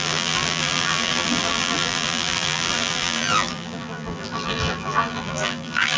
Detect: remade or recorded remade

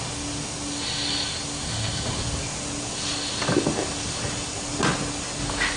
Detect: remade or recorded recorded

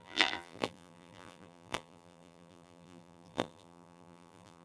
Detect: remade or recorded remade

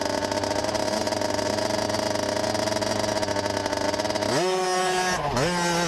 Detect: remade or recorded recorded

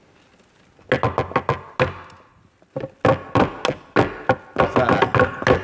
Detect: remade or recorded recorded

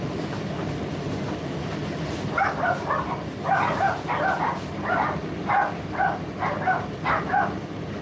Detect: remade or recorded recorded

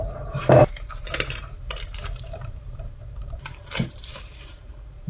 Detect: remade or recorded remade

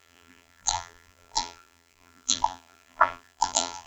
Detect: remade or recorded remade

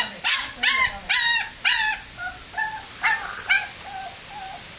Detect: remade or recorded recorded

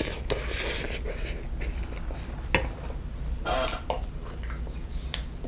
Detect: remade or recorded recorded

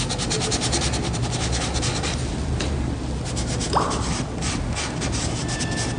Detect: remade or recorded recorded